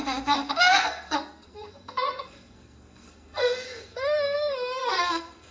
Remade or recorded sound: remade